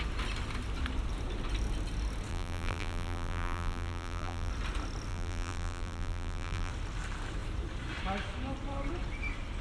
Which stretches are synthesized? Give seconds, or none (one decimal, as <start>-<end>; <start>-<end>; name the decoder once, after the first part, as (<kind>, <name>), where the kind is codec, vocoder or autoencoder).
2.3-4.5 (vocoder, BigVGAN v2); 5.1-6.7